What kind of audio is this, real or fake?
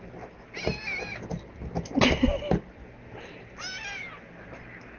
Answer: real